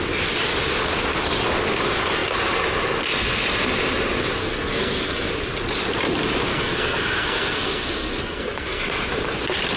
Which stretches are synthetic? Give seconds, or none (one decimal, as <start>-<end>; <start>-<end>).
4.4-5.3; 6.5-8.8